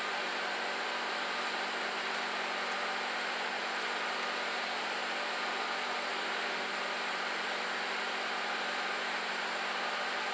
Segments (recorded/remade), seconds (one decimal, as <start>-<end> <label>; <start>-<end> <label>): 0.0-6.1 recorded; 6.1-8.6 remade; 8.6-10.3 recorded